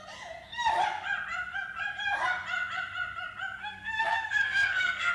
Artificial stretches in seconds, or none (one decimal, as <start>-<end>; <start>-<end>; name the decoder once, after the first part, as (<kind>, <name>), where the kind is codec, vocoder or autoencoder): 3.6-5.1 (codec, SNAC)